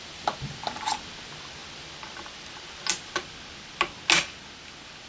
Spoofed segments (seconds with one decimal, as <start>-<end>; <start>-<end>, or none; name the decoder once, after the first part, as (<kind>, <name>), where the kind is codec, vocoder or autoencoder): none